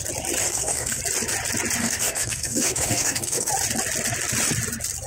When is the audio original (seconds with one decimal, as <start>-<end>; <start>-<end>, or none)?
0.0-0.4; 1.0-1.8; 3.5-5.1